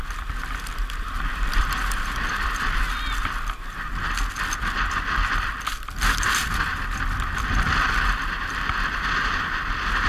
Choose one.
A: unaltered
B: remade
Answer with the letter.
B